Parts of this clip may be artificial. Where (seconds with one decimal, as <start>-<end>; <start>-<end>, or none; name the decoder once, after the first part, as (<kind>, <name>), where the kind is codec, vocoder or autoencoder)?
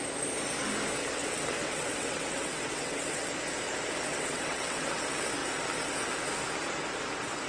1.0-3.3 (vocoder, WaveNeXt); 4.1-5.0